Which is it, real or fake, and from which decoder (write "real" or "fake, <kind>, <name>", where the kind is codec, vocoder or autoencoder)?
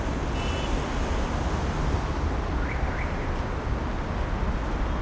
real